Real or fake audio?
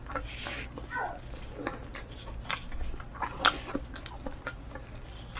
real